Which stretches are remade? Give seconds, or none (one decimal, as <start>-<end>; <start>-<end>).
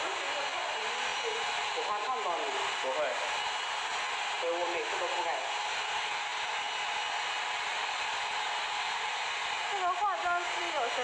none